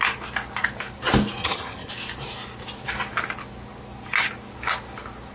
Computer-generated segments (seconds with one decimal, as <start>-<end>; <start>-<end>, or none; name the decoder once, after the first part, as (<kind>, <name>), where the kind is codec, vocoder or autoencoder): 1.4-1.9 (vocoder, HiFi-GAN)